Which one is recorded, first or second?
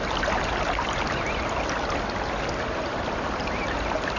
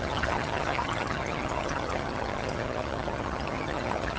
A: first